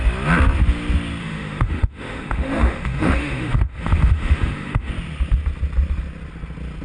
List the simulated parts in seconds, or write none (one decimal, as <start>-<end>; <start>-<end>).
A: 1.2-4.9